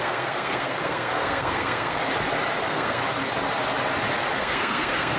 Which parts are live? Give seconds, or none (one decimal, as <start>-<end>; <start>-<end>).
2.0-2.6; 3.0-4.4